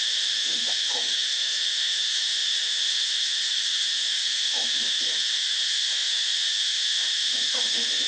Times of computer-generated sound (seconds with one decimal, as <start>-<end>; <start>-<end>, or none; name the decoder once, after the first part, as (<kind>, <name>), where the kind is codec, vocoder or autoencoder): 0.0-8.1 (autoencoder, DAC-VAE)